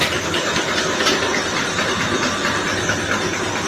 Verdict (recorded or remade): recorded